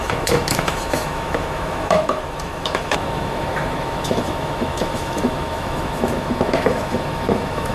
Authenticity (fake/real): fake